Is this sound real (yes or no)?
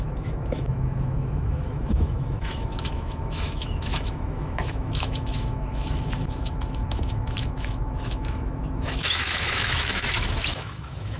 no